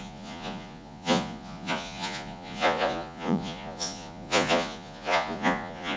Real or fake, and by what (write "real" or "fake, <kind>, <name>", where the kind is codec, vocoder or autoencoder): fake, vocoder, Vocos